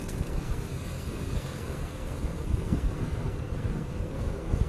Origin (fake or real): fake